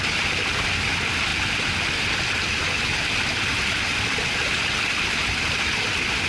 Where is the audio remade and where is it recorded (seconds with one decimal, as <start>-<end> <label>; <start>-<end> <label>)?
0.0-6.3 recorded